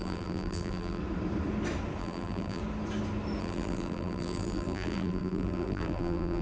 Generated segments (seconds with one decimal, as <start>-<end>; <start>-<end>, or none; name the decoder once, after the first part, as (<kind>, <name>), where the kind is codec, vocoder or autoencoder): 0.0-1.0 (vocoder, BigVGAN v2); 2.0-2.6; 3.4-6.4